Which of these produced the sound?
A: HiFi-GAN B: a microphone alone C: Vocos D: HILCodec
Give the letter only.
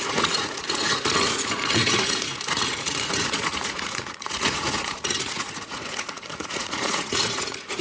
C